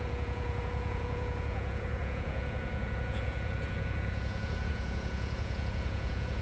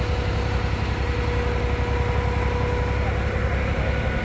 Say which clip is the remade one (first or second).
first